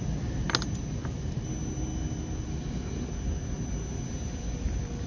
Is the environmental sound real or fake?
real